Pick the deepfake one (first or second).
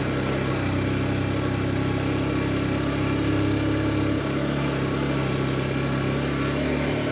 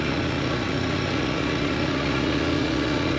second